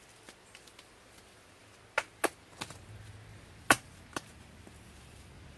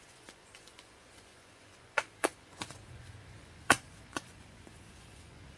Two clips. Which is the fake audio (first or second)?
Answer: second